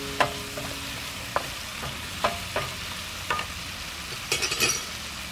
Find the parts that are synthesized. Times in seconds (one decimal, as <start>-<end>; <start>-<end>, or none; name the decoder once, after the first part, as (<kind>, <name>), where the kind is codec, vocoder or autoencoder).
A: none